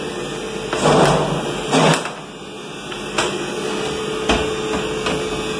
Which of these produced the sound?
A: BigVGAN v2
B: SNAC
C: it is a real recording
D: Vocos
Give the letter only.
C